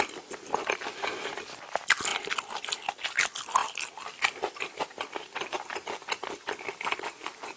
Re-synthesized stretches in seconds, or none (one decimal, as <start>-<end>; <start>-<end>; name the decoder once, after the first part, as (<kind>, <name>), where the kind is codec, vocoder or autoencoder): 3.6-5.5 (vocoder, BigVGAN v2)